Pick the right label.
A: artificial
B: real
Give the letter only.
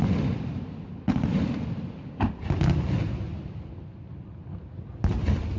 B